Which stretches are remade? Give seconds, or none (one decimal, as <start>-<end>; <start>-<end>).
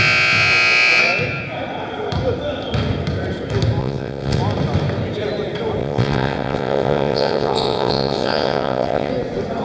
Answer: 3.8-4.4; 5.8-9.1